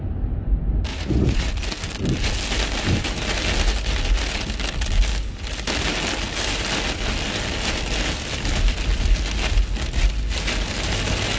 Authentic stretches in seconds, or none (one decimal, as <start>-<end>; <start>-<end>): 0.0-0.9; 1.5-11.4